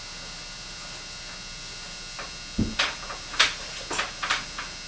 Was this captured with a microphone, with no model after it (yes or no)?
yes